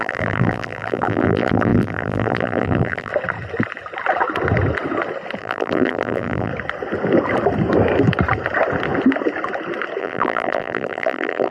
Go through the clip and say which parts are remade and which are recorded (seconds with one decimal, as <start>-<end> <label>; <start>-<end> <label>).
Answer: 0.0-3.1 remade; 3.1-5.4 recorded; 5.4-6.5 remade; 6.5-10.0 recorded; 10.0-11.5 remade

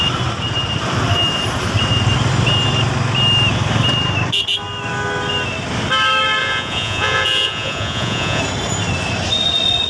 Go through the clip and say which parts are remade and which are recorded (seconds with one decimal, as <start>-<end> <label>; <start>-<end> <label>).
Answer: 0.0-6.4 recorded; 6.4-8.4 remade; 8.4-9.9 recorded

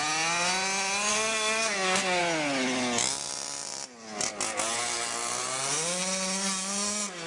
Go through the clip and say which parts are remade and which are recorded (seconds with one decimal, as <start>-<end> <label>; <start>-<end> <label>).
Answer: 0.0-1.1 recorded; 1.1-2.2 remade; 2.2-7.3 recorded

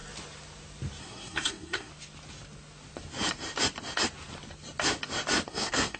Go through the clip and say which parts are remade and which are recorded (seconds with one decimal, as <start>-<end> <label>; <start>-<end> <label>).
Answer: 0.0-1.0 recorded; 1.0-1.9 remade; 1.9-5.5 recorded; 5.5-6.0 remade

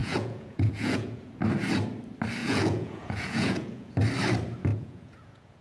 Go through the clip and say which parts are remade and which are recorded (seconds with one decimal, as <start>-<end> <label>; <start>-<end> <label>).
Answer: 0.0-1.3 remade; 1.3-2.4 recorded; 2.4-3.9 remade; 3.9-4.7 recorded; 4.7-5.6 remade

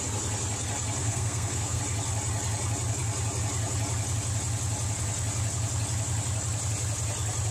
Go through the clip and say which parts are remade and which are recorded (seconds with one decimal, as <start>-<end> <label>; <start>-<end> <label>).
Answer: 0.0-1.0 recorded; 1.0-1.8 remade; 1.8-7.5 recorded

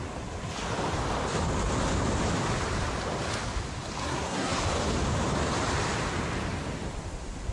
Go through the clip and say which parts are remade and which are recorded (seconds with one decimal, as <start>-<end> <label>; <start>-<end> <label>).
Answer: 0.0-4.0 recorded; 4.0-4.6 remade; 4.6-7.5 recorded